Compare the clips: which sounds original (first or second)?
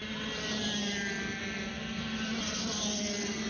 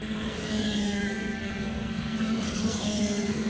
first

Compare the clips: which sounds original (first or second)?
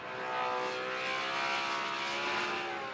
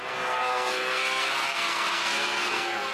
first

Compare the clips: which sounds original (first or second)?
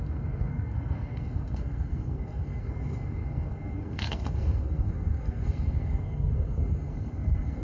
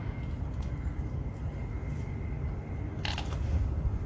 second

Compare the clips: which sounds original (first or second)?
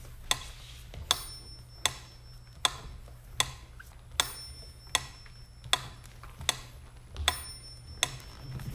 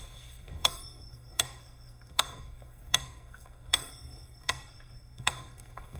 first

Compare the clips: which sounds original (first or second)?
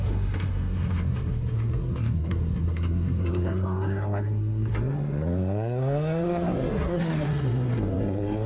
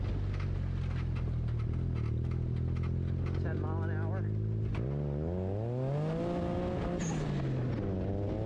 second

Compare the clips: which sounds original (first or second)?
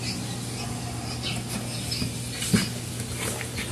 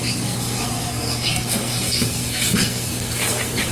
first